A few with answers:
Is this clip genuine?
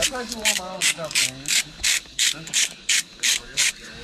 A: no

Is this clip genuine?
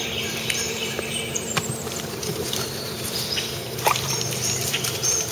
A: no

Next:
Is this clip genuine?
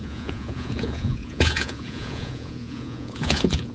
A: no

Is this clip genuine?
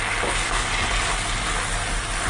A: yes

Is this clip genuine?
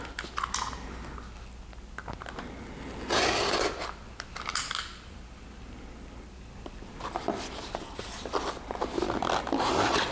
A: yes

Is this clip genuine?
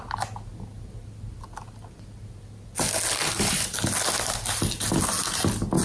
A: yes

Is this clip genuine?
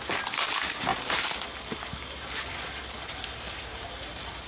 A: yes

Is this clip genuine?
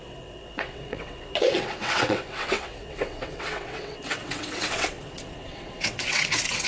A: no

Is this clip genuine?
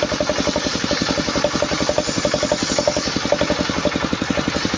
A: yes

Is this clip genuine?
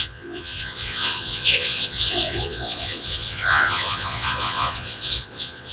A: no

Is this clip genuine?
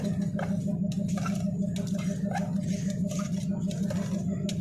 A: yes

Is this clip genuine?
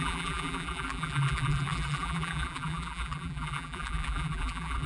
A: no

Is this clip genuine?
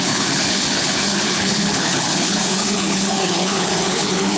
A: no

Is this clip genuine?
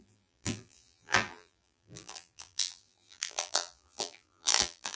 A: no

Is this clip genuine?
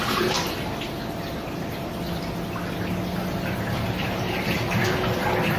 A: yes